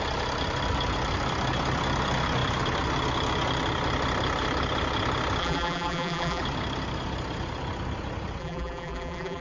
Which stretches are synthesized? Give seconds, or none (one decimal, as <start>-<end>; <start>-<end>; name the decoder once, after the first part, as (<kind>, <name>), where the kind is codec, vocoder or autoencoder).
5.4-6.4 (vocoder, BigVGAN v2); 8.4-9.4